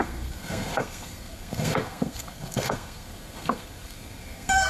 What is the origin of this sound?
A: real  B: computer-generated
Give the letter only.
B